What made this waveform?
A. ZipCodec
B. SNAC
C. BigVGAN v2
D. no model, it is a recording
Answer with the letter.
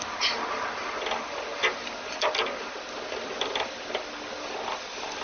D